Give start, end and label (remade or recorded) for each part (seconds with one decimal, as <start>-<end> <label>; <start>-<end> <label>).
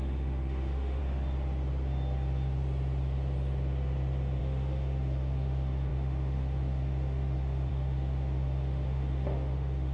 0.0-1.0 remade; 1.0-4.4 recorded; 4.4-9.9 remade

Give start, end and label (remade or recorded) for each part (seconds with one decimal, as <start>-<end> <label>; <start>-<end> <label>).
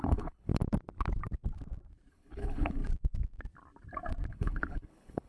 0.0-0.5 remade; 0.5-2.1 recorded; 2.1-2.8 remade; 2.8-4.3 recorded; 4.3-5.3 remade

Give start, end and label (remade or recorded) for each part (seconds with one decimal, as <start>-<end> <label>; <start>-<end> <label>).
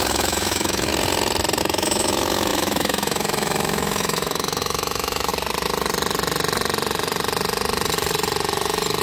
0.0-0.9 remade; 0.9-1.6 recorded; 1.6-5.3 remade; 5.3-9.0 recorded